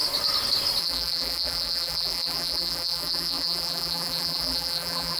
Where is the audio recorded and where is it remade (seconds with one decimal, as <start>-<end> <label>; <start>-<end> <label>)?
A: 0.0-0.8 recorded; 0.8-5.2 remade